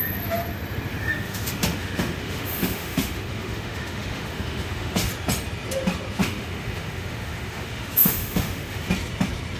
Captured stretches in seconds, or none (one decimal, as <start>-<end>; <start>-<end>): 0.0-0.9; 5.1-6.2; 8.9-9.6